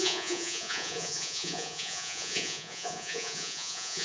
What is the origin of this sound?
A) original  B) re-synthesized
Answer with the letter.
B